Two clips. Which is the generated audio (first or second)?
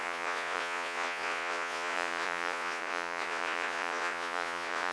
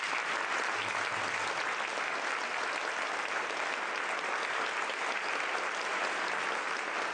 first